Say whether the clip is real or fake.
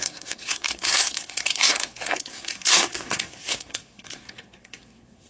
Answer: fake